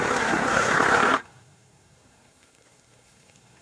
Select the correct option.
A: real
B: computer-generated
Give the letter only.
B